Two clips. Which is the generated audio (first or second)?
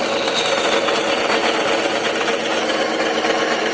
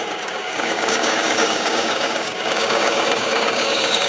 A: second